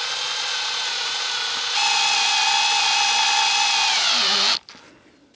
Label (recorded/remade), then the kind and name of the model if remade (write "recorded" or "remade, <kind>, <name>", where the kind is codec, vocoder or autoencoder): recorded